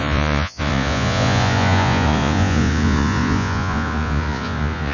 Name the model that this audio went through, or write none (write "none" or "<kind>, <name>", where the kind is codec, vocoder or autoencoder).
vocoder, Vocos